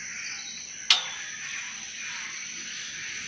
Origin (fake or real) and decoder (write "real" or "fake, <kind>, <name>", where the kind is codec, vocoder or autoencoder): real